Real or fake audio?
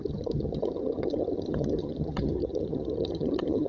fake